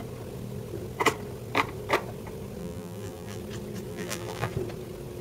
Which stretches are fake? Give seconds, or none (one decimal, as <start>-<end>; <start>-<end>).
2.6-3.4; 3.9-4.5